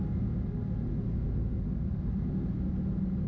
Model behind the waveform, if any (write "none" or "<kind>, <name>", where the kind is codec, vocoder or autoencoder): none